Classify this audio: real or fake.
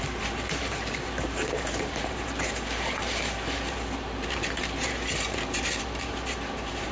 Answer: fake